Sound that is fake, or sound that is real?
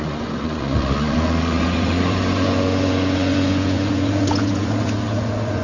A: fake